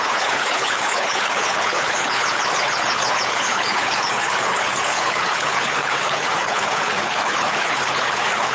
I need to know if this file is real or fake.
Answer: fake